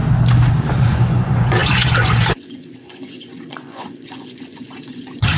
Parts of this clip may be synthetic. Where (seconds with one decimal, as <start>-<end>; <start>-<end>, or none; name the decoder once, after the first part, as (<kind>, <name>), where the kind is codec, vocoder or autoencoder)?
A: 0.6-5.4 (vocoder, Vocos)